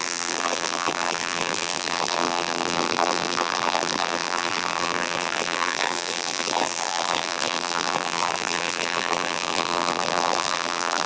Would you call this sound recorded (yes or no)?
no